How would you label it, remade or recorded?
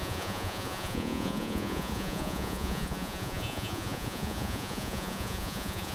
remade